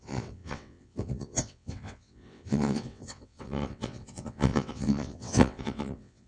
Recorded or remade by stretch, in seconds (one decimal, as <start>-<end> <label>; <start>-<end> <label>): 0.0-6.3 remade